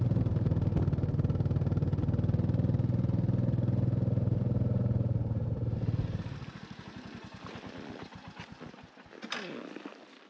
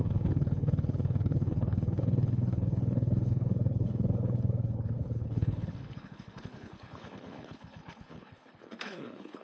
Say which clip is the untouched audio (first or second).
first